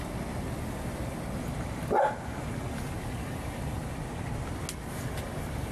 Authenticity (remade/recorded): recorded